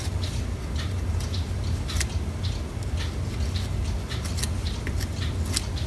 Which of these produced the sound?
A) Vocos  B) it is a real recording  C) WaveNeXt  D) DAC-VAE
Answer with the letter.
B